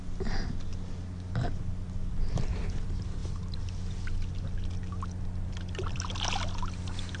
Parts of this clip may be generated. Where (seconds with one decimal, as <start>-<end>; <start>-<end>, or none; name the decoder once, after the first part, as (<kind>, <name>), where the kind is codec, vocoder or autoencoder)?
none

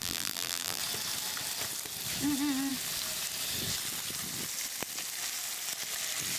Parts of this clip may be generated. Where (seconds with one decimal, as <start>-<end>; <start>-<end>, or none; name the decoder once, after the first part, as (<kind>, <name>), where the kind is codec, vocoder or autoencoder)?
0.0-0.8 (vocoder, BigVGAN v2)

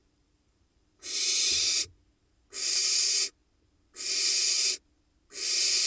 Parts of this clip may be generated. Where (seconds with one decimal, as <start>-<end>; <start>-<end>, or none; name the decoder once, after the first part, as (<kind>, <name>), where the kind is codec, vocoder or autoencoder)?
0.0-1.9 (vocoder, BigVGAN v2)

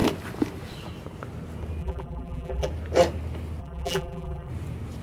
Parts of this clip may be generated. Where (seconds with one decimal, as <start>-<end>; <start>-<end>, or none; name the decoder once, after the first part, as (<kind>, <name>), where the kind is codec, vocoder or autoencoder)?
1.8-2.7 (vocoder, BigVGAN v2); 3.6-4.5

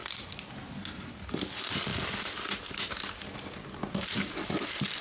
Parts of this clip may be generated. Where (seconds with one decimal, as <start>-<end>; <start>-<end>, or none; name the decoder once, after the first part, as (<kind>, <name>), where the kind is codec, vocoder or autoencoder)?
1.3-1.9 (vocoder, BigVGAN v2)

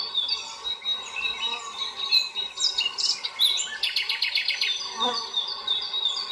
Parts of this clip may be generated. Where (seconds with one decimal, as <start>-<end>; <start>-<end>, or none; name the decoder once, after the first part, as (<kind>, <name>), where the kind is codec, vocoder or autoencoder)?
none